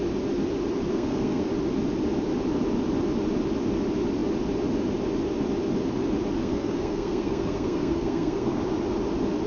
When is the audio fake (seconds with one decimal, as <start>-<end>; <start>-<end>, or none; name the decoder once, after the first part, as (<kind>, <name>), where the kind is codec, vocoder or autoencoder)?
0.9-1.5 (codec, SNAC); 6.4-8.6